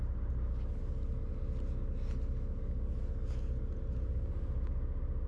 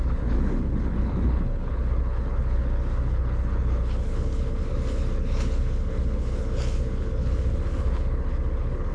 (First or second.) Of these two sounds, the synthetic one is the second